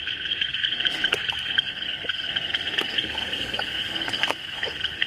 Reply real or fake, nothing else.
fake